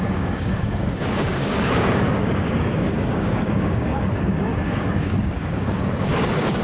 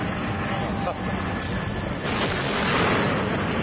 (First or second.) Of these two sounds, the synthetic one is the first